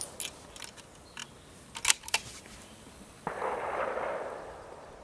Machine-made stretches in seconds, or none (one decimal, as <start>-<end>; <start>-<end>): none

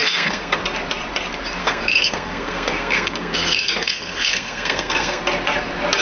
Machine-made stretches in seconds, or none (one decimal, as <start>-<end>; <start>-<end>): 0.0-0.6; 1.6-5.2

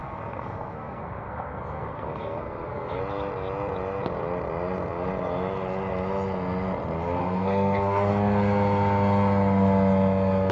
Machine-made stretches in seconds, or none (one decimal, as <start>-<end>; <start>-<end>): 0.0-3.0; 7.2-8.1

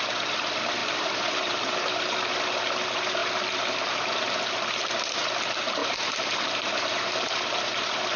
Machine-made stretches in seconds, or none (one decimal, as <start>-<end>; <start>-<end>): 0.8-2.2; 5.8-8.2

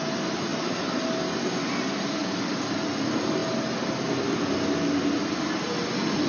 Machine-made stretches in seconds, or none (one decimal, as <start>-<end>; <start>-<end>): none

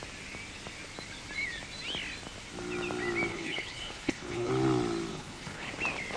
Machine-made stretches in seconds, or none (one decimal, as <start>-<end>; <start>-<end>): 3.3-4.5; 5.1-5.7